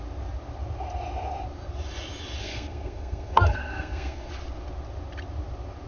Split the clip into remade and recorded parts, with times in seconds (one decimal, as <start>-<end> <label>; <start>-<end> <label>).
0.0-2.4 recorded; 2.4-4.3 remade; 4.3-5.9 recorded